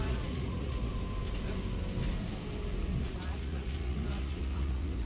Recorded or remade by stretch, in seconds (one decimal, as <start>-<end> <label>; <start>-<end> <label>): 0.0-0.9 remade; 0.9-3.0 recorded; 3.0-5.1 remade